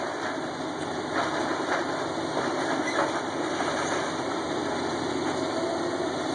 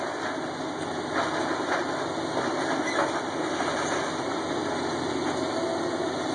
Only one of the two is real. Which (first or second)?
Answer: second